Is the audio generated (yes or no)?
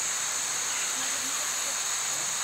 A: no